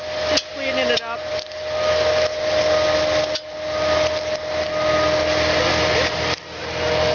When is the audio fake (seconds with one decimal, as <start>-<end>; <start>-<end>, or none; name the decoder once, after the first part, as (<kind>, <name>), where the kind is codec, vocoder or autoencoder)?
none